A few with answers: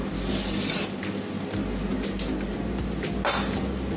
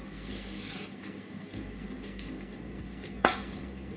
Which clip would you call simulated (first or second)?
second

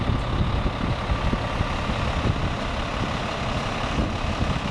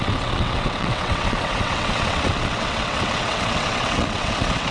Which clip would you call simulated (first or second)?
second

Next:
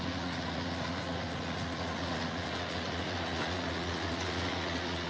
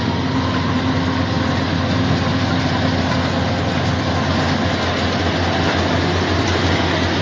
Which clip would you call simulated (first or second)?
first